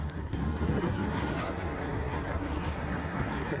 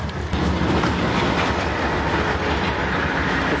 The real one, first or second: second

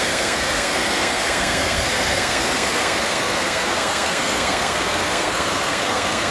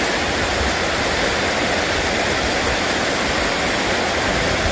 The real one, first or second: second